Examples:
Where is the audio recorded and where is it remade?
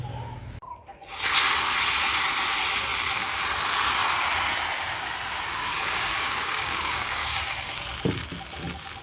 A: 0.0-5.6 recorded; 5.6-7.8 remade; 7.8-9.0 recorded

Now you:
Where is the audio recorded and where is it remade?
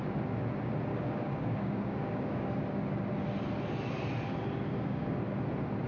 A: 0.0-0.9 recorded; 0.9-2.5 remade; 2.5-4.7 recorded; 4.7-5.2 remade; 5.2-5.9 recorded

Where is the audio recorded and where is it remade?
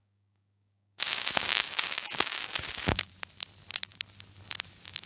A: 0.0-3.1 remade; 3.1-5.1 recorded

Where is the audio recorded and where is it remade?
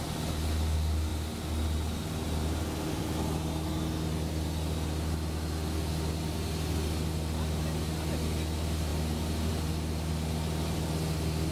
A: 0.0-11.5 recorded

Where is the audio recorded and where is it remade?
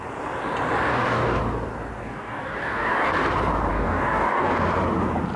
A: 0.0-0.9 recorded; 0.9-1.4 remade; 1.4-2.0 recorded; 2.0-3.1 remade; 3.1-3.7 recorded; 3.7-4.5 remade; 4.5-5.4 recorded